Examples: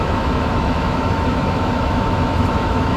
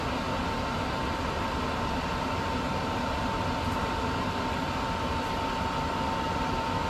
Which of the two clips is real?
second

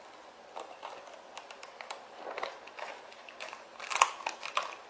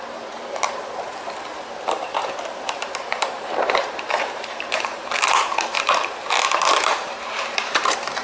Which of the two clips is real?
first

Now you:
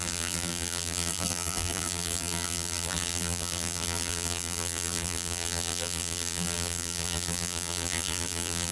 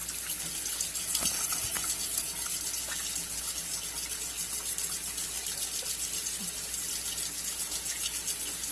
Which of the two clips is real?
second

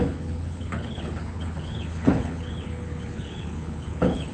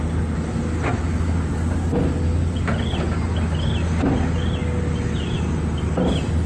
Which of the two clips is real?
second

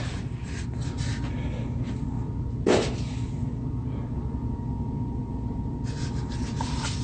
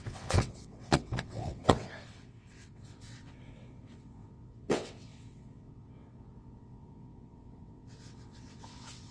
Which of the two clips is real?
first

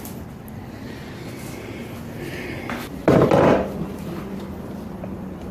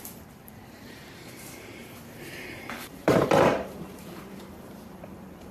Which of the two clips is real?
first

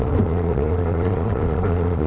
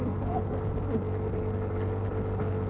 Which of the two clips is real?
second